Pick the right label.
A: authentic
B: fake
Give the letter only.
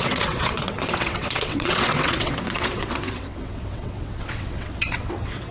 B